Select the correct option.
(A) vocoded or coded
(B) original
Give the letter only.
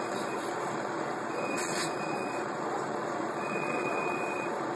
A